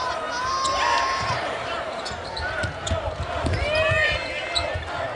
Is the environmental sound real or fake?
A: fake